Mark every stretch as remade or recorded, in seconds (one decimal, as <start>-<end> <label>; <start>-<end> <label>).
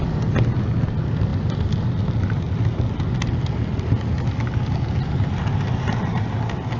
0.0-6.8 recorded